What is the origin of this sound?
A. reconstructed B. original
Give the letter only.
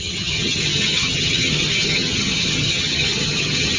A